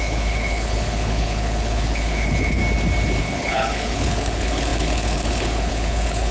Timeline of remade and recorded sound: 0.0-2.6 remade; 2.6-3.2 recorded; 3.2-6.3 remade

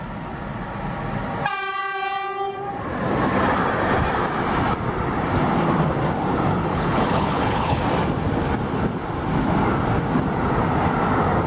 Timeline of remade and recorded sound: 0.0-6.6 recorded; 6.6-7.8 remade; 7.8-11.5 recorded

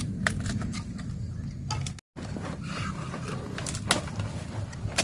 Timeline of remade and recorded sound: 0.0-5.0 recorded